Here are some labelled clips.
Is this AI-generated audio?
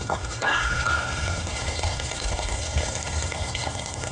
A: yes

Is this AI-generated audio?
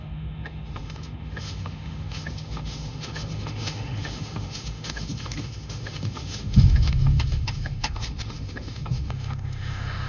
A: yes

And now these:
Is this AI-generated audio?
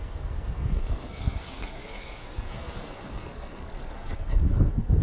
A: yes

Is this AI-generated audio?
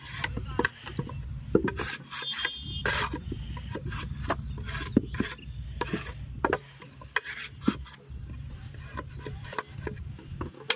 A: no